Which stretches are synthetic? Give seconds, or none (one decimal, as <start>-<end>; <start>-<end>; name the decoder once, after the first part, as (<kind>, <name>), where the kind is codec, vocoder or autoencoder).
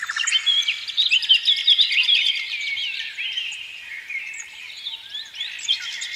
1.2-4.6 (vocoder, BigVGAN v2)